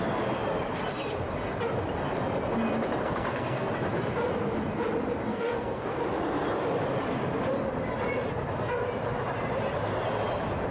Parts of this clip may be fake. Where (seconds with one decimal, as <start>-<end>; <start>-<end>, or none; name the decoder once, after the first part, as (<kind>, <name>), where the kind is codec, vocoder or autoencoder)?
3.0-3.7 (codec, SNAC); 5.3-6.0